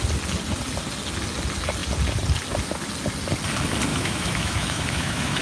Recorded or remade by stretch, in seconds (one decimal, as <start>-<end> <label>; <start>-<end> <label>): 0.0-3.9 recorded; 3.9-5.4 remade